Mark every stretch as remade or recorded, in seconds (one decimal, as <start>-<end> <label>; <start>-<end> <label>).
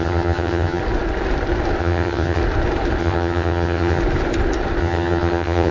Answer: 0.0-0.8 remade; 0.8-1.8 recorded; 1.8-2.4 remade; 2.4-3.0 recorded; 3.0-4.0 remade; 4.0-4.8 recorded; 4.8-5.7 remade